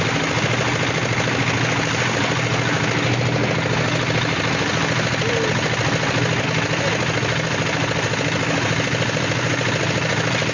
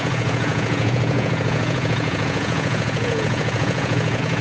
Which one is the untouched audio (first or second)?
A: first